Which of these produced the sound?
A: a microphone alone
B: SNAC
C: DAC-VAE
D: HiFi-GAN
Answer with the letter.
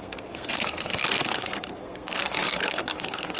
B